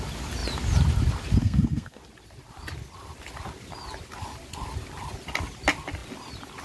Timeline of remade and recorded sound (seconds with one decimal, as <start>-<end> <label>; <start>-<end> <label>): 0.0-1.4 recorded; 1.4-2.0 remade; 2.0-6.6 recorded

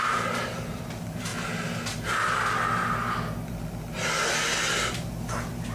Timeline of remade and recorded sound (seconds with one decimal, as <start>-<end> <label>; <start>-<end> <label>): 0.0-1.3 remade; 1.3-4.7 recorded; 4.7-5.7 remade